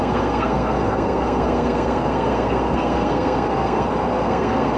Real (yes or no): no